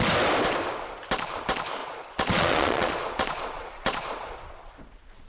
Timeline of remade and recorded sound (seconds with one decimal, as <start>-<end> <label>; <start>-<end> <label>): 0.0-1.8 recorded; 1.8-5.3 remade